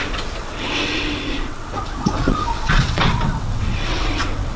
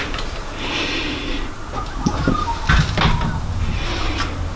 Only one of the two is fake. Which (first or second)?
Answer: first